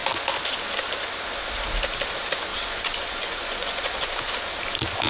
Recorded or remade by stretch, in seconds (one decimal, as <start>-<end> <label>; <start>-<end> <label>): 0.0-2.5 recorded; 2.5-4.3 remade; 4.3-5.1 recorded